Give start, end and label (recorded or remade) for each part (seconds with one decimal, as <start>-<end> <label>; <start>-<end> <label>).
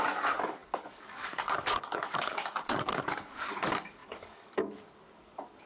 0.0-5.7 remade